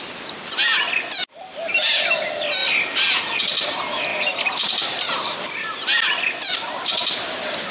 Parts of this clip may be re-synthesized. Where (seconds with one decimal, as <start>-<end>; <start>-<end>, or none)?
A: 2.6-3.4; 4.1-6.7